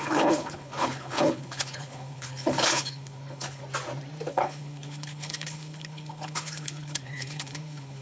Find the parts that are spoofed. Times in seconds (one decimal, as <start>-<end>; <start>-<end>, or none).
0.0-3.6; 4.3-8.0